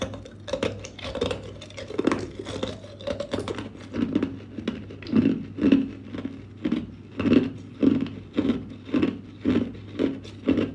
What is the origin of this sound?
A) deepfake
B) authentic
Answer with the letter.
B